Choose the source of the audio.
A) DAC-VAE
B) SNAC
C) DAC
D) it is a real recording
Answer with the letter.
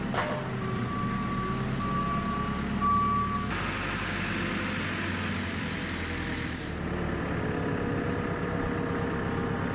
D